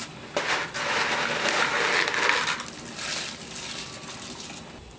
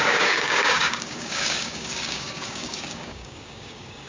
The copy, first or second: second